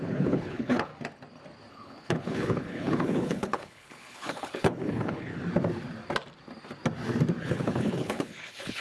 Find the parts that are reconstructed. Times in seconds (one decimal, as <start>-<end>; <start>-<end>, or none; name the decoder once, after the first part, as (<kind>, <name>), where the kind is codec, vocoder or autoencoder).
0.0-0.9 (codec, HILCodec); 1.7-5.3; 7.4-8.8